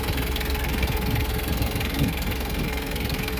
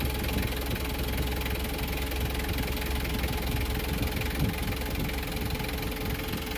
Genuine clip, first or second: second